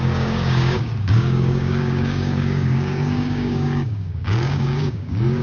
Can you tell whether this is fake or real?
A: fake